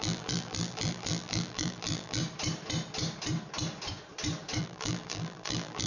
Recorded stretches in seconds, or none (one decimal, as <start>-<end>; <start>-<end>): 2.2-4.6